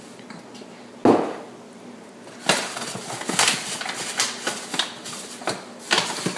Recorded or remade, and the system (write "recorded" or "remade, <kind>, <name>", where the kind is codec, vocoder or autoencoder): recorded